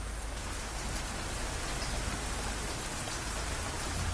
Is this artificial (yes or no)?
no